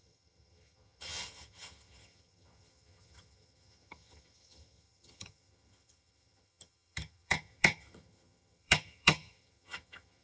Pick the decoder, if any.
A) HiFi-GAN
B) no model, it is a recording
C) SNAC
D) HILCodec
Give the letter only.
A